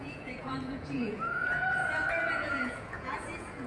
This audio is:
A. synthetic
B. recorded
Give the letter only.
A